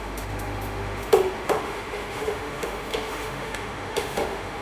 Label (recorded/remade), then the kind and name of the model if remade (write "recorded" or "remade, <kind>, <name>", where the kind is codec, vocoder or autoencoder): remade, autoencoder, DAC-VAE